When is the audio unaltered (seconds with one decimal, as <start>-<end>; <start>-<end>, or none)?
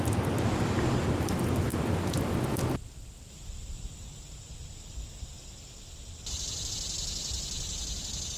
0.0-8.4